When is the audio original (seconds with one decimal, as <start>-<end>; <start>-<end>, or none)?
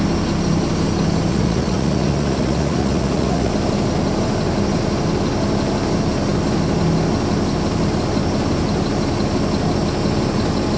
0.0-1.3; 3.5-10.8